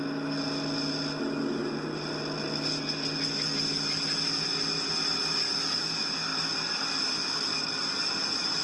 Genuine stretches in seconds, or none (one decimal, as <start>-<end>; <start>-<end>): 0.0-8.6